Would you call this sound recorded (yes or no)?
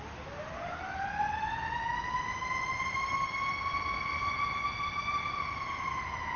yes